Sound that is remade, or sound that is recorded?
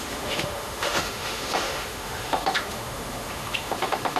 remade